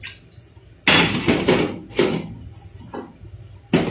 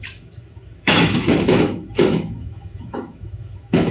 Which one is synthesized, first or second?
second